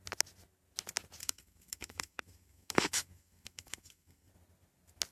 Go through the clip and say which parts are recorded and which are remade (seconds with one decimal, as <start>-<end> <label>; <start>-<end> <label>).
0.0-1.2 recorded; 1.2-4.3 remade; 4.3-5.1 recorded